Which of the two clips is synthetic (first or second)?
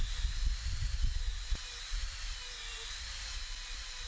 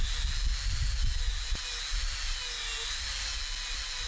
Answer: first